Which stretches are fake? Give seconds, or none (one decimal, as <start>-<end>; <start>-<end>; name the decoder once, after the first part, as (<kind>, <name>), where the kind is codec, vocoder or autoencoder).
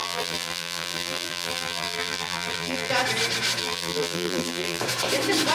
0.0-2.9 (vocoder, BigVGAN v2); 3.6-4.8